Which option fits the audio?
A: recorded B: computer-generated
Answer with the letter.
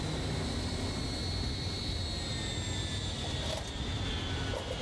A